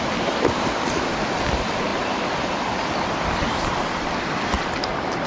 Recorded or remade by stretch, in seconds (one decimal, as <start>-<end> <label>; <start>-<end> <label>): 0.0-5.3 recorded